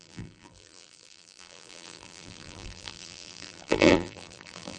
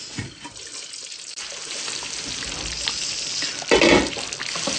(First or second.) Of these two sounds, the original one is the second